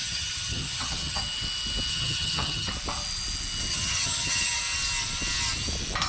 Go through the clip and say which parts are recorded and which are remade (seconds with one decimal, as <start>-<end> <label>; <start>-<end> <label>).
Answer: 0.0-1.2 remade; 1.2-1.9 recorded; 1.9-2.7 remade; 2.7-3.7 recorded; 3.7-4.6 remade; 4.6-6.1 recorded